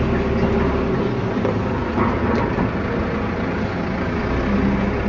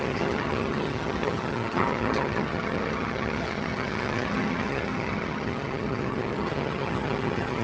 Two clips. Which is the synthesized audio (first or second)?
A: second